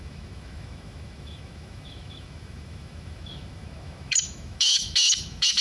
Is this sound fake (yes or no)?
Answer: yes